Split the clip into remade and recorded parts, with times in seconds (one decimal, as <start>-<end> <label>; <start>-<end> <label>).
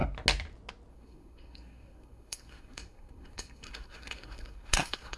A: 0.0-0.9 recorded; 0.9-5.2 remade